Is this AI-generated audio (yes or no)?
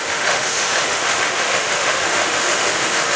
yes